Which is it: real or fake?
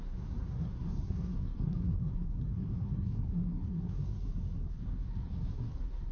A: fake